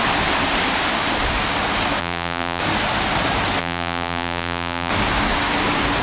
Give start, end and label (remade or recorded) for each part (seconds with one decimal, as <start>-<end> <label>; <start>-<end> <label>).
0.0-2.0 recorded; 2.0-2.6 remade; 2.6-3.6 recorded; 3.6-4.9 remade; 4.9-6.0 recorded